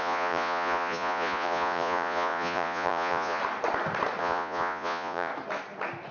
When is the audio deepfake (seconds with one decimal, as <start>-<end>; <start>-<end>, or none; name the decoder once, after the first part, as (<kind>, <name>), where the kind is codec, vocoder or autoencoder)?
0.0-3.4 (vocoder, Vocos); 4.2-5.3